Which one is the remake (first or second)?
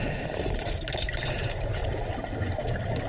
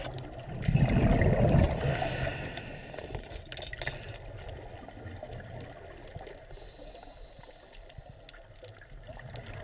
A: first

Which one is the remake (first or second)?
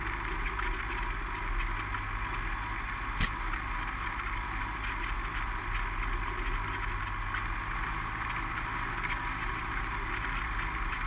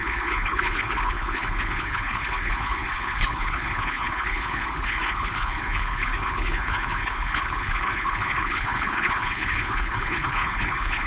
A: second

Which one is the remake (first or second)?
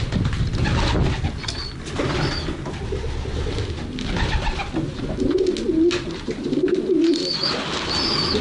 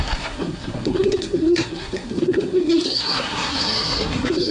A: second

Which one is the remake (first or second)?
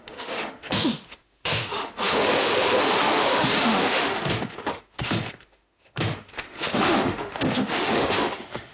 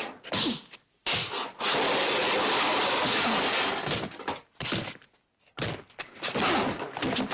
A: first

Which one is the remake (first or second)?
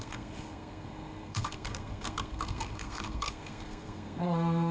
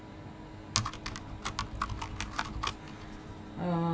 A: first